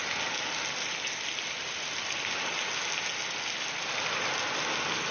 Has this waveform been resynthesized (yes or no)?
no